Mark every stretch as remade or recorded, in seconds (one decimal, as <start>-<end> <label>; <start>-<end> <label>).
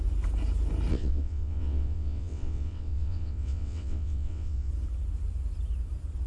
0.0-0.9 recorded; 0.9-4.7 remade; 4.7-6.3 recorded